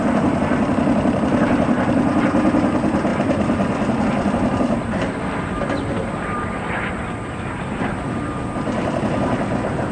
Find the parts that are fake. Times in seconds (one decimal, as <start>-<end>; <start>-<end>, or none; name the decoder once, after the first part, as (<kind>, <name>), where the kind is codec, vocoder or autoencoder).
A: 3.1-5.9 (vocoder, BigVGAN v2)